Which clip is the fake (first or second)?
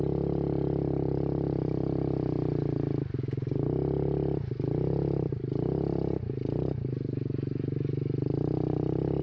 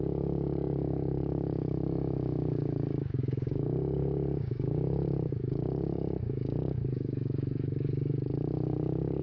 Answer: second